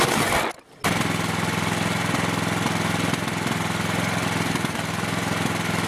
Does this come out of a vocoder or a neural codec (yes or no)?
no